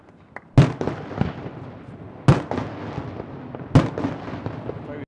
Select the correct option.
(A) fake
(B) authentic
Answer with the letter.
B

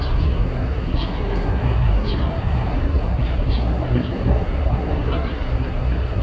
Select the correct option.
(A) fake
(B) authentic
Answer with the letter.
A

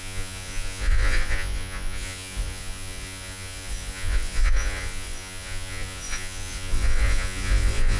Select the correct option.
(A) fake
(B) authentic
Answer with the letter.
A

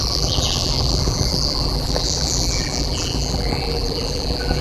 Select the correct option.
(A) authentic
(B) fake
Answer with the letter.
B